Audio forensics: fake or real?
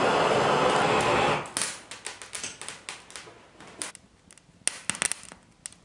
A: real